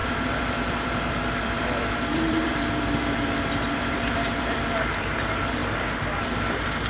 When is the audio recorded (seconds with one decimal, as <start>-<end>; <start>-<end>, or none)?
5.6-6.2